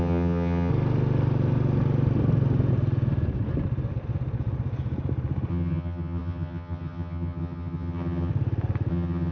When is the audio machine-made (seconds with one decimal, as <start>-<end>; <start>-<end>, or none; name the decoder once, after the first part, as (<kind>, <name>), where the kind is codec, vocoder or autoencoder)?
0.0-0.7 (vocoder, HiFi-GAN); 5.5-8.3; 8.9-9.3